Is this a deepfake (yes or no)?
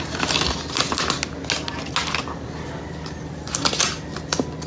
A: no